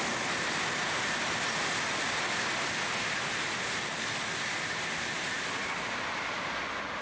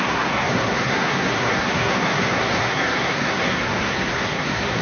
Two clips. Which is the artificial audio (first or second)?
second